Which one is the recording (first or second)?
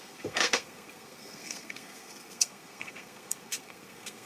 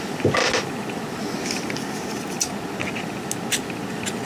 second